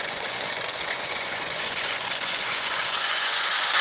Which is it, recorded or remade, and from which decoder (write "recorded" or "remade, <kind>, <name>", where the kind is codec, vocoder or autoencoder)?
remade, vocoder, Vocos